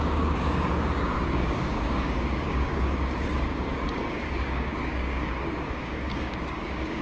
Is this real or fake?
fake